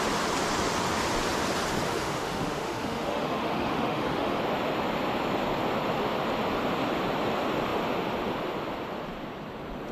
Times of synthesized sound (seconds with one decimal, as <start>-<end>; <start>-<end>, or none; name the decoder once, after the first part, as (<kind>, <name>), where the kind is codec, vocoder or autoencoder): 1.9-4.4 (autoencoder, DAC-VAE)